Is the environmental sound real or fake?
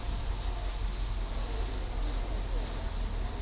real